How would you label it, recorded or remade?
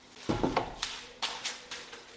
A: recorded